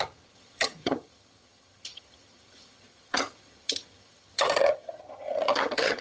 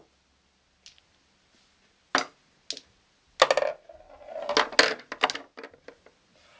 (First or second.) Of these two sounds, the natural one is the second